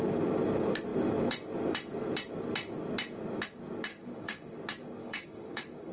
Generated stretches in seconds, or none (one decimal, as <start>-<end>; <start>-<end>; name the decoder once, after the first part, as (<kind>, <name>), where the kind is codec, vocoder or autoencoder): 3.9-4.5 (codec, DAC); 5.0-5.9